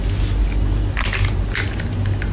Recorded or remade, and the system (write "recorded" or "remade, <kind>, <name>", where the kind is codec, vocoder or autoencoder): recorded